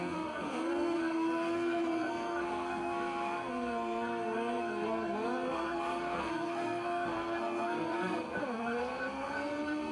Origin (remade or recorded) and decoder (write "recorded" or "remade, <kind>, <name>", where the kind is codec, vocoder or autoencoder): remade, codec, SNAC